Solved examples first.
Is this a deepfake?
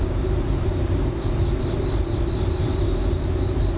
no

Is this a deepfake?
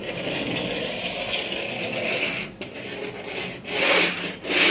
no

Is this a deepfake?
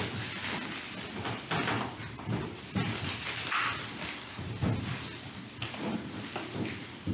no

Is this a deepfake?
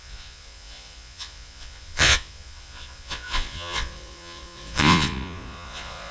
yes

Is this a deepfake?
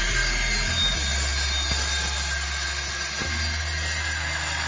no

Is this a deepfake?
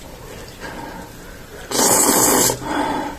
no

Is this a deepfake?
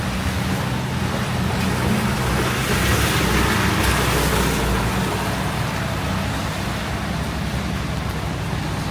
no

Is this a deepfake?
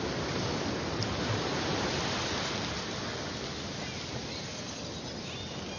no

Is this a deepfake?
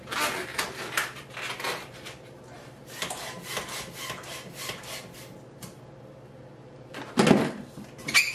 no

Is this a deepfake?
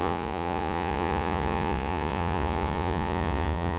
yes